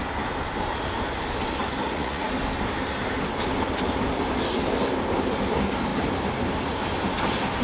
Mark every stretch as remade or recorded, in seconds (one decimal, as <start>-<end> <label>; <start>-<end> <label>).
0.0-1.8 recorded; 1.8-2.3 remade; 2.3-7.6 recorded